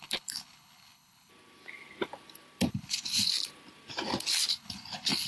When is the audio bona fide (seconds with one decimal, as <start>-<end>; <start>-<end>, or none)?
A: 1.3-2.7; 3.3-4.5

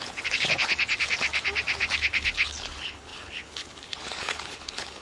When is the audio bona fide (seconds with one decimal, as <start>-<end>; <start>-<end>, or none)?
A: 0.9-1.8

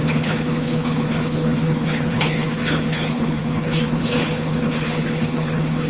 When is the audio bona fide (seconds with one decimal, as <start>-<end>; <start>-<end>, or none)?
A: none

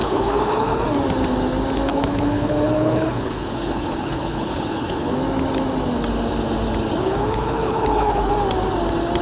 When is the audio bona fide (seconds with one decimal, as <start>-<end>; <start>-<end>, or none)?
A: 0.8-1.9; 5.1-7.0; 8.3-9.2

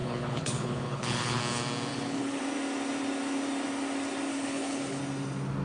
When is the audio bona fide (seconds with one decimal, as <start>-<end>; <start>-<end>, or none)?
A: 1.4-1.9; 2.4-4.3; 5.0-5.6

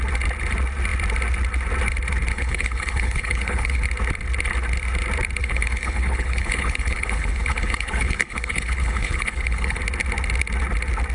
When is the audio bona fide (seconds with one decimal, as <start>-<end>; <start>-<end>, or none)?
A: 0.0-2.3; 3.8-5.4; 9.8-11.1